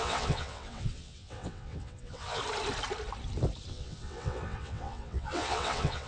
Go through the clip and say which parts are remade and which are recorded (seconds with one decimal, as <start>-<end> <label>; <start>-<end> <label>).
0.0-2.4 remade; 2.4-3.7 recorded; 3.7-6.1 remade